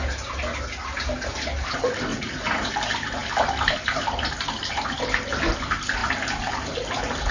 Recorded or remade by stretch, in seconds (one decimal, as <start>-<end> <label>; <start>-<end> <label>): 0.0-2.1 recorded; 2.1-2.7 remade; 2.7-7.3 recorded